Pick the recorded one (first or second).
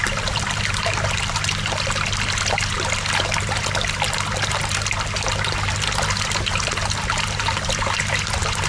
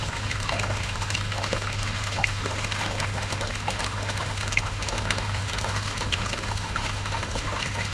first